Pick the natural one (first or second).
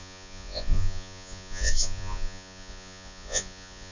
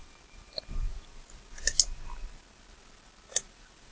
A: second